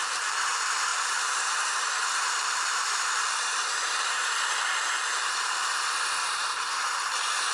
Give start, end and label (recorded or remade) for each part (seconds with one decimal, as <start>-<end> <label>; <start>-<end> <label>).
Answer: 0.0-4.2 remade; 4.2-6.2 recorded; 6.2-7.5 remade